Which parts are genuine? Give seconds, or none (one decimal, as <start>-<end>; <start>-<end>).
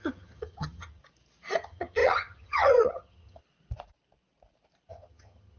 1.0-1.6; 3.4-4.9